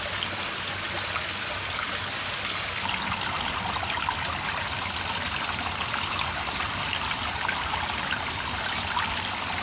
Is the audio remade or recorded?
recorded